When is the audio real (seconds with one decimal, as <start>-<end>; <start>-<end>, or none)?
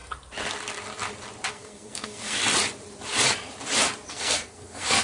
0.0-1.5; 2.4-4.1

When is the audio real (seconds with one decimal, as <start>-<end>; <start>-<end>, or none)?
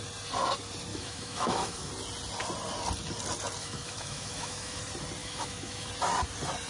0.0-0.9; 1.9-3.6; 4.8-5.2; 5.9-6.7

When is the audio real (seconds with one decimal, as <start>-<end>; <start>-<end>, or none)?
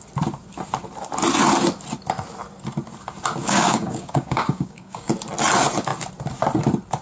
0.0-3.4; 5.1-7.0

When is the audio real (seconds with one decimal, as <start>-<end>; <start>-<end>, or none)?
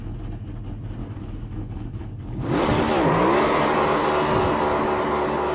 0.0-1.0; 2.8-5.5